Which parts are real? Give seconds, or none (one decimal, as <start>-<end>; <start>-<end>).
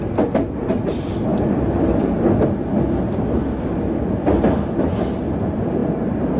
0.0-6.4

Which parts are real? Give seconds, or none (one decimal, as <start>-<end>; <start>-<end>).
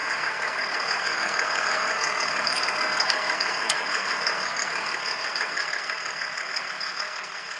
none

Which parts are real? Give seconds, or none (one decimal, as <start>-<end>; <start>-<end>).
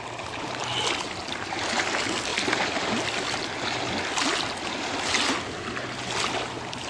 0.0-6.9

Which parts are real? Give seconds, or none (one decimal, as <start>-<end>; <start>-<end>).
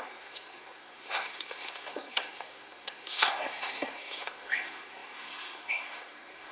none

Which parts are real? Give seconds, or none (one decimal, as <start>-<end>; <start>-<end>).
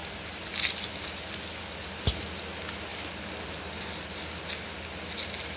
0.0-5.6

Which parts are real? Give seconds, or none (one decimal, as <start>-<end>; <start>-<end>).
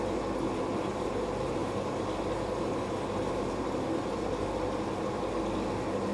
0.0-6.1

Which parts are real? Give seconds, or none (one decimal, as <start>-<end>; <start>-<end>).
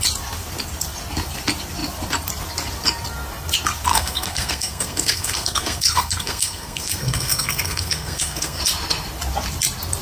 0.0-3.9; 8.6-10.0